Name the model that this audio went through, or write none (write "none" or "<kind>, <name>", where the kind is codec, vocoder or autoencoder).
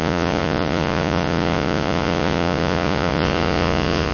vocoder, Vocos